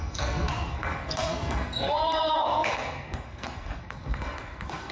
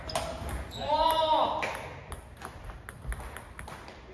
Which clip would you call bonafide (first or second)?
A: second